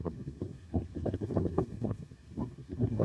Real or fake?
fake